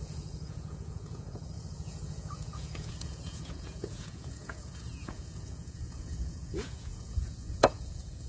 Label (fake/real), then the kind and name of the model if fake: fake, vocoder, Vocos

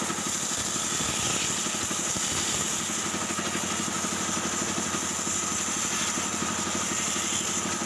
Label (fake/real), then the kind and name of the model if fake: real